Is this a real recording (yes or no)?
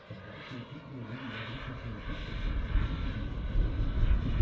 yes